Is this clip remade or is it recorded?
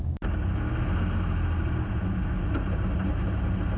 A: recorded